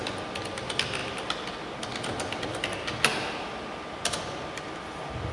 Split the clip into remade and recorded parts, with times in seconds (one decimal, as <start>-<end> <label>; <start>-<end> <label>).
0.0-5.3 recorded